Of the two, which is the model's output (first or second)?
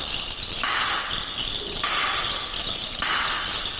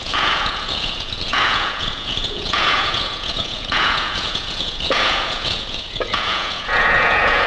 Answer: second